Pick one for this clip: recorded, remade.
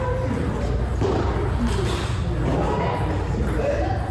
recorded